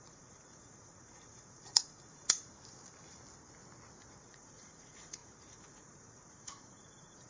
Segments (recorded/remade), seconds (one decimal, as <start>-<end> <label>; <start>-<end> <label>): 0.0-2.4 remade; 2.4-4.2 recorded; 4.2-7.3 remade

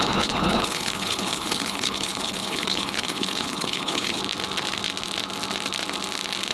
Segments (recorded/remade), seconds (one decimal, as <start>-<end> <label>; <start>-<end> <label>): 0.0-4.2 remade; 4.2-6.5 recorded

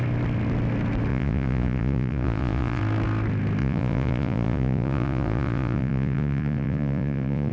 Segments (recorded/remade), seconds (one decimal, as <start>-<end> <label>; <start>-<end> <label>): 0.0-1.1 recorded; 1.1-2.8 remade; 2.8-3.6 recorded; 3.6-7.5 remade

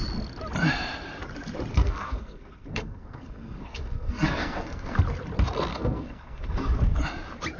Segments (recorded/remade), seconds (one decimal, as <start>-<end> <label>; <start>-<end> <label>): 0.0-1.7 recorded; 1.7-5.0 remade; 5.0-5.7 recorded; 5.7-7.0 remade; 7.0-7.6 recorded

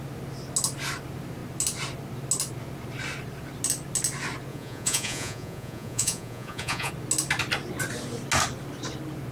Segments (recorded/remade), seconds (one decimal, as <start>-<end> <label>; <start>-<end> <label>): 0.0-4.5 recorded; 4.5-6.9 remade; 6.9-9.3 recorded

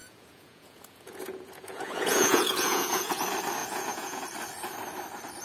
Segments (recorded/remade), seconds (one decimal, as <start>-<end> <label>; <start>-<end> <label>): 0.0-3.2 remade; 3.2-3.6 recorded; 3.6-4.2 remade; 4.2-5.4 recorded